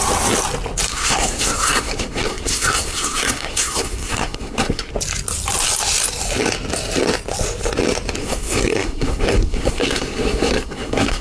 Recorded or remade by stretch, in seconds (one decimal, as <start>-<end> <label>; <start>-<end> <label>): 0.0-0.9 recorded; 0.9-4.9 remade; 4.9-8.2 recorded; 8.2-11.2 remade